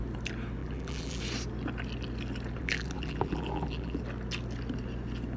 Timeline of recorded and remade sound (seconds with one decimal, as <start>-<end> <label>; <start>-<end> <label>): 0.0-0.6 recorded; 0.6-1.2 remade; 1.2-2.6 recorded; 2.6-4.0 remade; 4.0-5.4 recorded

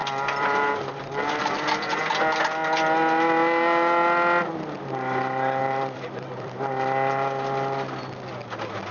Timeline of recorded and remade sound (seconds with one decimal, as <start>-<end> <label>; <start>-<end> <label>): 0.0-2.2 remade; 2.2-5.6 recorded; 5.6-6.7 remade; 6.7-8.9 recorded

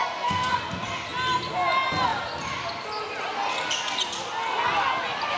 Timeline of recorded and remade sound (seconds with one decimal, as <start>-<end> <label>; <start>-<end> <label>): 0.0-0.5 remade; 0.5-5.4 recorded

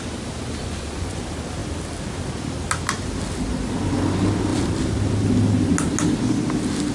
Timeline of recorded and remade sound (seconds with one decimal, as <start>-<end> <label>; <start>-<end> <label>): 0.0-0.6 recorded; 0.6-1.2 remade; 1.2-6.9 recorded

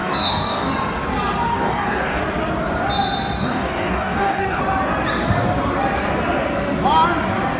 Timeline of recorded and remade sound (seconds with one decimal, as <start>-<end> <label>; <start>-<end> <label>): 0.0-0.7 remade; 0.7-1.5 recorded; 1.5-2.2 remade; 2.2-3.4 recorded; 3.4-4.6 remade; 4.6-7.6 recorded